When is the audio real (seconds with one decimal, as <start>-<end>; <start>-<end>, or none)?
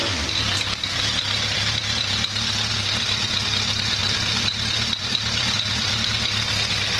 0.0-4.0; 6.1-7.0